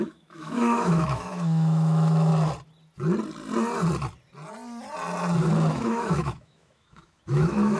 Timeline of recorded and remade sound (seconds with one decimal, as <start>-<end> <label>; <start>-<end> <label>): 0.0-2.3 remade; 2.3-5.7 recorded; 5.7-7.8 remade